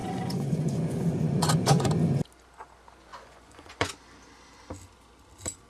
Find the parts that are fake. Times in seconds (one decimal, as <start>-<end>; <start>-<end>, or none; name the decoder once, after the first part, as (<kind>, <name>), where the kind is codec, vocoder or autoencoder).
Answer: 0.0-1.9 (vocoder, Vocos); 3.1-3.9